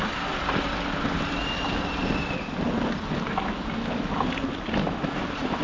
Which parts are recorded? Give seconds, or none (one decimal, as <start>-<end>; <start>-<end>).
0.0-5.6